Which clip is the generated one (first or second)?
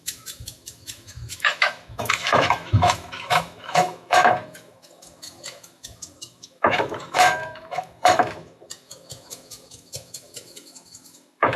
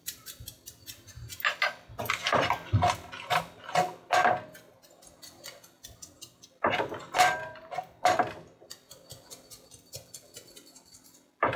first